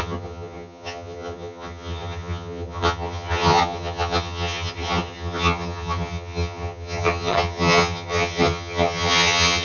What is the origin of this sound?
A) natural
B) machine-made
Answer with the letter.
B